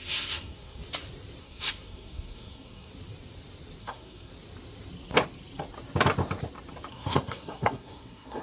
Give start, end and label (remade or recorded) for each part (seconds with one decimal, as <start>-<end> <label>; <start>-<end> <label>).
0.0-0.8 remade; 0.8-1.4 recorded; 1.4-2.9 remade; 2.9-3.8 recorded; 3.8-4.3 remade; 4.3-6.9 recorded; 6.9-8.4 remade